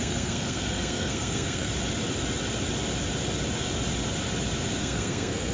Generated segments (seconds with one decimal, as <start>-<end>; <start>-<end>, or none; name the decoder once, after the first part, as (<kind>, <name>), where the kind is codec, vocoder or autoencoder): 0.0-1.7 (codec, SNAC); 4.8-5.5